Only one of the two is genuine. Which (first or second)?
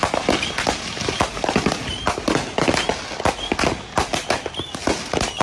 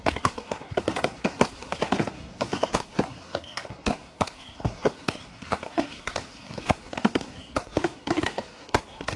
first